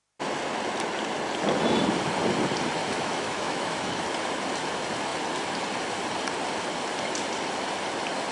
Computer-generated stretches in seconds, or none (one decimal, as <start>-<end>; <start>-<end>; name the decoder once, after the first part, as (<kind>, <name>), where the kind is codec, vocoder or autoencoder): 2.8-4.0 (autoencoder, DAC-VAE)